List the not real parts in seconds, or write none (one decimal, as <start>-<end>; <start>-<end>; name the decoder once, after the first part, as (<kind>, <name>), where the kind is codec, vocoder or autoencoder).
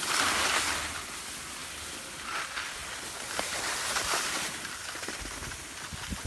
none